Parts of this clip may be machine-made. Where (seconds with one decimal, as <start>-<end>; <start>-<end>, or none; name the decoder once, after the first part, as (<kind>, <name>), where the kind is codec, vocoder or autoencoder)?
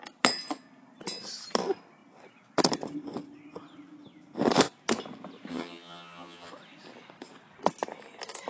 5.5-6.5 (vocoder, HiFi-GAN)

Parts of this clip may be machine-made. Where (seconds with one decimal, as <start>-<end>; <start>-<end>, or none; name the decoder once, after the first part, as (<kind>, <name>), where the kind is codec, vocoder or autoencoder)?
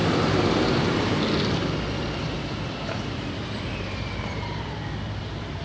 0.0-1.1 (vocoder, BigVGAN v2); 2.2-5.6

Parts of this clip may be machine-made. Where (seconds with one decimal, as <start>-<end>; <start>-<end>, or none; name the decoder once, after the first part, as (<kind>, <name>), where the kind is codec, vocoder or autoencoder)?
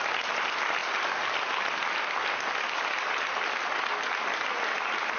none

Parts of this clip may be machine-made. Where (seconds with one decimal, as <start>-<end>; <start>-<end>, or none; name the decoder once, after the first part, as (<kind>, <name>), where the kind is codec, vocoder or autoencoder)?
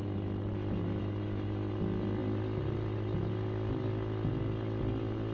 none